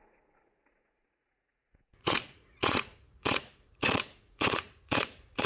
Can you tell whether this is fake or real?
fake